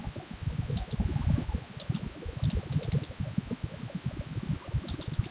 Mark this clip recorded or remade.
recorded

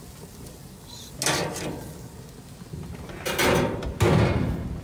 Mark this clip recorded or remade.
recorded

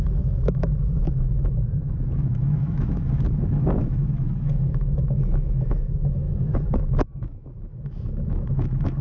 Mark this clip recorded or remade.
remade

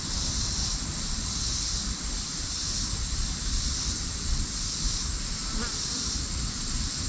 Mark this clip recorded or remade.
remade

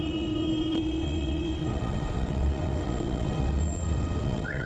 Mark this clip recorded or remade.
remade